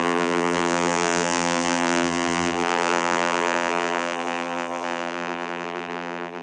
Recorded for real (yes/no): no